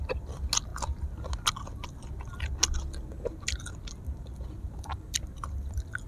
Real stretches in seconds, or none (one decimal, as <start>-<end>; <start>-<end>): 0.0-6.1